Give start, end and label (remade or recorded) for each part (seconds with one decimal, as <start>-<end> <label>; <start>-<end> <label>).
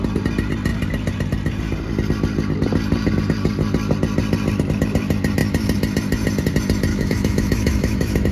0.0-6.9 recorded; 6.9-8.3 remade